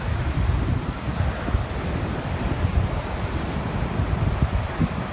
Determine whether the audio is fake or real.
real